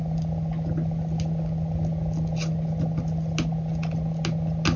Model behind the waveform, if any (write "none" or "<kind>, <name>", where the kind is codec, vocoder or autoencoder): none